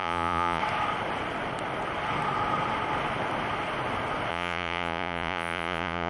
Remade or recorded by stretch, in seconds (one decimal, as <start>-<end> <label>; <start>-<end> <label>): 0.0-0.6 remade; 0.6-4.3 recorded; 4.3-6.1 remade

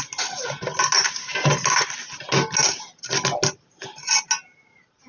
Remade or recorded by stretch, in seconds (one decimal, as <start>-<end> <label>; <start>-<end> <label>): 0.0-5.1 recorded

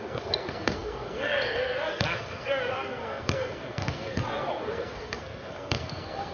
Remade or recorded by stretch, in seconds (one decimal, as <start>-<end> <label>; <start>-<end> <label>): 0.0-6.3 remade

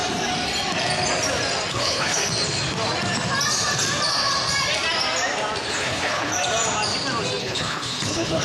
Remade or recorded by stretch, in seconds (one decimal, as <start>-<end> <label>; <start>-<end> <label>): 0.0-1.7 recorded; 1.7-2.2 remade; 2.2-5.7 recorded; 5.7-6.3 remade; 6.3-7.4 recorded; 7.4-8.4 remade